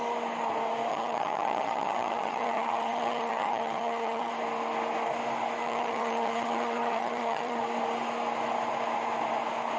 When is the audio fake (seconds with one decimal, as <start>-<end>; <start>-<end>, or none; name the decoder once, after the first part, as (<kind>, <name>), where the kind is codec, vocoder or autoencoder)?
0.9-4.3 (vocoder, HiFi-GAN); 5.6-7.6